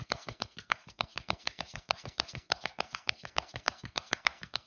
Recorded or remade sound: remade